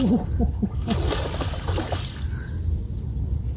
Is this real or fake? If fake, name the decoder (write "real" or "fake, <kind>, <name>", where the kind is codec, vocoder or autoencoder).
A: real